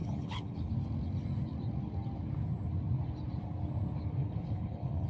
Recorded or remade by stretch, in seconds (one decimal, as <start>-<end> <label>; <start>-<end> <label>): 0.0-0.7 remade; 0.7-4.2 recorded; 4.2-5.1 remade